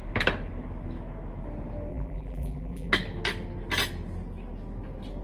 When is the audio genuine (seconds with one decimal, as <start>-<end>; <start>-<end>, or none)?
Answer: 0.0-1.9; 2.9-5.2